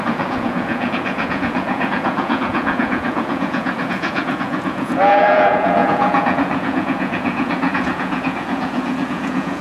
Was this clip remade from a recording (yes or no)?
yes